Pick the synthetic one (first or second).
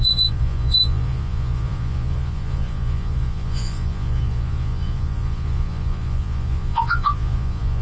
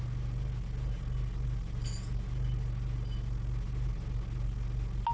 first